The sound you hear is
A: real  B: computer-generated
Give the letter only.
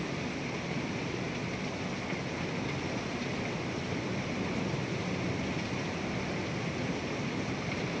A